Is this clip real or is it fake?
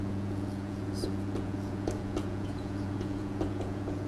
fake